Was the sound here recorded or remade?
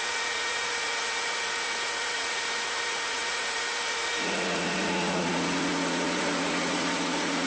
remade